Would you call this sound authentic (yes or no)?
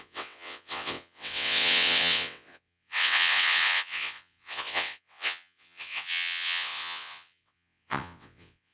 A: no